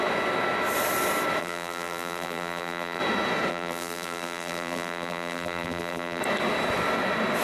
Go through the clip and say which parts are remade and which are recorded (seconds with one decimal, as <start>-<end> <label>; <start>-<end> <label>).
0.0-1.4 recorded; 1.4-3.0 remade; 3.0-3.5 recorded; 3.5-6.2 remade; 6.2-7.4 recorded